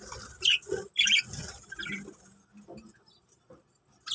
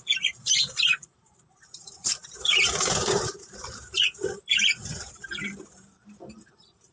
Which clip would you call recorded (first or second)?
first